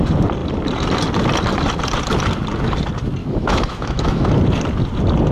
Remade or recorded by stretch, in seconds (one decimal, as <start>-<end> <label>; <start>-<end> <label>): 0.0-3.2 recorded; 3.2-4.3 remade; 4.3-5.3 recorded